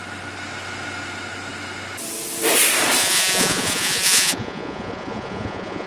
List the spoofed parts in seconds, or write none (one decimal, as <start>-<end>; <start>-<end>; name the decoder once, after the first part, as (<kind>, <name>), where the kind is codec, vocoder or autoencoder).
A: 3.0-5.9 (vocoder, Vocos)